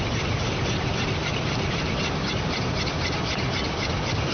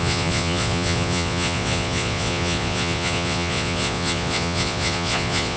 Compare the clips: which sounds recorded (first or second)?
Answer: first